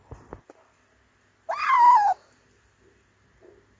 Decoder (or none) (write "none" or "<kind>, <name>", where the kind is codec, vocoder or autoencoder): none